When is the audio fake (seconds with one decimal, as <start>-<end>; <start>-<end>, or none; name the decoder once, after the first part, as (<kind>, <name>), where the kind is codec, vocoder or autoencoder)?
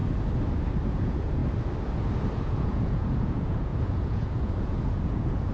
0.9-1.4 (vocoder, Vocos); 2.4-5.5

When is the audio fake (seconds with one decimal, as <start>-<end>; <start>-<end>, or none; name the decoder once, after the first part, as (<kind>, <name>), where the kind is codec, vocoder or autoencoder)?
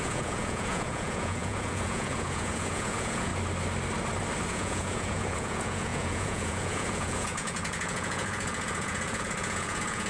0.0-3.3 (vocoder, Vocos); 4.5-10.1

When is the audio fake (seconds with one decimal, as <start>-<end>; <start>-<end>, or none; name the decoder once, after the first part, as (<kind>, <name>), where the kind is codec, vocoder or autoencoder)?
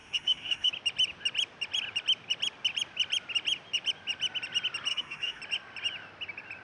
0.0-0.7 (autoencoder, DAC-VAE); 4.9-5.4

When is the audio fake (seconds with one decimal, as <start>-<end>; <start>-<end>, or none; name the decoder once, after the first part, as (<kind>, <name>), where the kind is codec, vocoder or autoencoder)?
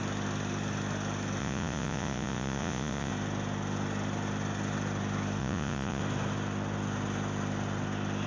1.4-3.1 (vocoder, Vocos); 5.4-6.0